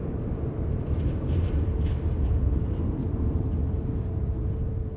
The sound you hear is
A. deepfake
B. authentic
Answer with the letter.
A